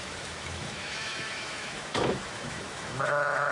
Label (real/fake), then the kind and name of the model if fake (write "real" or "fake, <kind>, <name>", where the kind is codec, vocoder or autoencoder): fake, autoencoder, DAC-VAE